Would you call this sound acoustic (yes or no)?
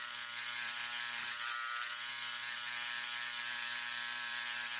no